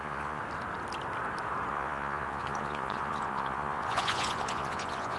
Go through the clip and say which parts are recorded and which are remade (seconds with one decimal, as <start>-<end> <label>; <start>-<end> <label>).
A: 0.0-0.4 remade; 0.4-1.7 recorded; 1.7-5.2 remade

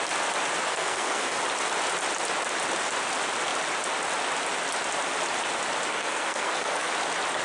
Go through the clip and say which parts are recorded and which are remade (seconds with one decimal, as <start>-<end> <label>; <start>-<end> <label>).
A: 0.0-0.7 recorded; 0.7-1.4 remade; 1.4-5.9 recorded; 5.9-6.9 remade; 6.9-7.4 recorded

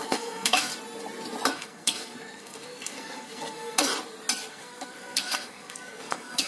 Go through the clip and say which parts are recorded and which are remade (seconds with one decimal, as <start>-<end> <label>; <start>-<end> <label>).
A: 0.0-0.7 remade; 0.7-1.5 recorded; 1.5-3.9 remade; 3.9-4.5 recorded; 4.5-6.5 remade

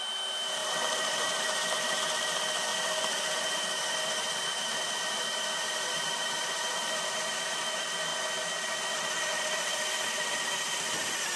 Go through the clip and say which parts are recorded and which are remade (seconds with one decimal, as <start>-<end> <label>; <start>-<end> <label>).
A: 0.0-8.1 remade; 8.1-9.3 recorded; 9.3-11.4 remade

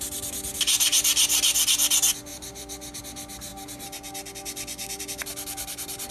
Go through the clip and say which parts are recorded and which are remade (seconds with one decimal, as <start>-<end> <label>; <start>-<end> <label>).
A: 0.0-2.3 recorded; 2.3-3.0 remade; 3.0-6.1 recorded

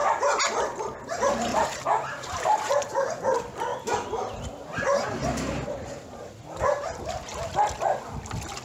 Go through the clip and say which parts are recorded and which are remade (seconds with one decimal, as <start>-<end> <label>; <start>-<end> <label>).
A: 0.0-1.5 recorded; 1.5-3.2 remade; 3.2-8.6 recorded

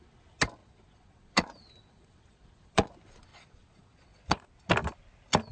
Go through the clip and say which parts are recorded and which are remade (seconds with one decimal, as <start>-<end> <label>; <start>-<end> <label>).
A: 0.0-0.6 recorded; 0.6-2.9 remade; 2.9-3.3 recorded; 3.3-4.5 remade; 4.5-5.5 recorded

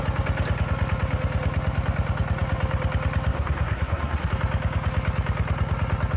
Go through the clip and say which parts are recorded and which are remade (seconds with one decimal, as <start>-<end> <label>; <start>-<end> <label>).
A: 0.0-3.3 recorded; 3.3-4.3 remade; 4.3-6.2 recorded